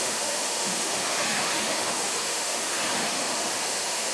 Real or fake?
fake